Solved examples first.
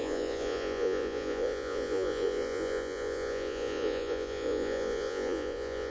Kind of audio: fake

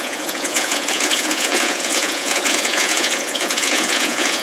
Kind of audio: fake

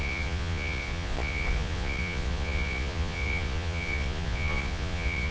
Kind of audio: fake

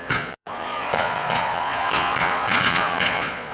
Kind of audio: fake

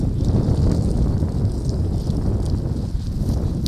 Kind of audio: real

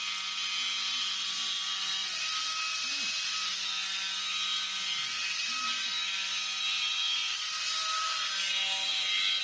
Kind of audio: real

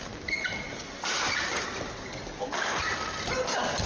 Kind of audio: real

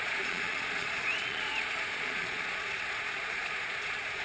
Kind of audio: fake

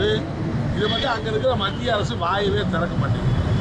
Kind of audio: real